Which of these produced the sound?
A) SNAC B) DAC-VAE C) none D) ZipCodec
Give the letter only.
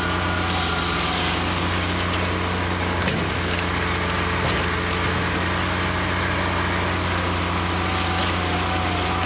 C